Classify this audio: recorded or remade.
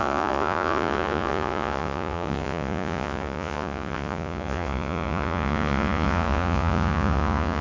remade